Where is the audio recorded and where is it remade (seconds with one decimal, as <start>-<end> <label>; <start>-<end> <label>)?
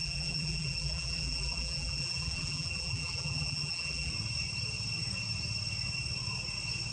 0.0-4.1 remade; 4.1-6.9 recorded